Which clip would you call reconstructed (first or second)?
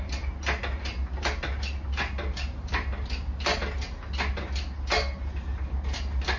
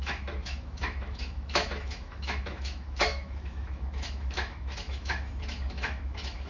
second